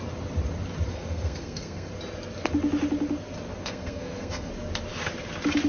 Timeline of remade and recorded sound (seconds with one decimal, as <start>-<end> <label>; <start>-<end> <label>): 0.0-0.9 recorded; 0.9-1.9 remade; 1.9-3.6 recorded; 3.6-4.5 remade; 4.5-5.7 recorded